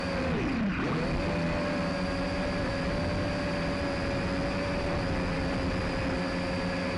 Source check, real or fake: real